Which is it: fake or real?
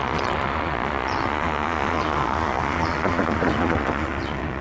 fake